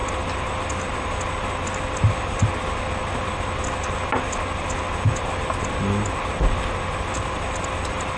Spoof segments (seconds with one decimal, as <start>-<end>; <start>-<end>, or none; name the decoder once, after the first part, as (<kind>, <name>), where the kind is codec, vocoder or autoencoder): none